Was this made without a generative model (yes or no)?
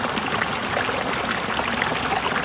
yes